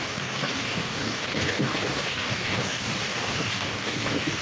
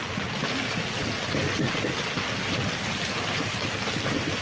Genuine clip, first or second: second